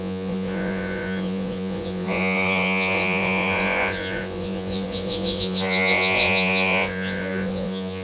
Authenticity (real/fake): fake